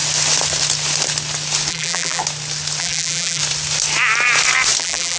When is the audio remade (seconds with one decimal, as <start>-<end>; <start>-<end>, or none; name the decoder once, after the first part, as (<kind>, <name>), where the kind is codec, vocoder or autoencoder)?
1.7-2.2 (vocoder, BigVGAN v2); 2.8-3.4; 4.8-5.2